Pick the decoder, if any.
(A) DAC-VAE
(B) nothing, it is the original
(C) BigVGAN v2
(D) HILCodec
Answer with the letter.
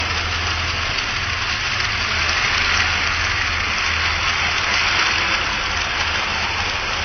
B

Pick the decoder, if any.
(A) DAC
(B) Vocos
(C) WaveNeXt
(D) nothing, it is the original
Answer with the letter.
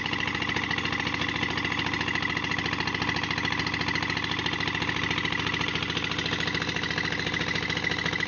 D